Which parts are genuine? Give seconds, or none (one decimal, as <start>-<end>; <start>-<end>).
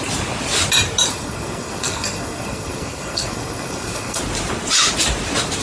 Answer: 0.0-1.1; 4.2-5.6